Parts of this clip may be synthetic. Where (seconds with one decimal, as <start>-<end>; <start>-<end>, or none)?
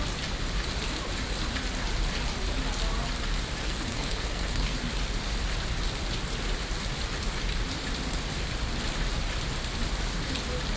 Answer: 3.6-4.9